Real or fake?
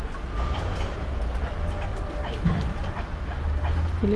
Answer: real